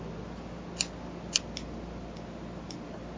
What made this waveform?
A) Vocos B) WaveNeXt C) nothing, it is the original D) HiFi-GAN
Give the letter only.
C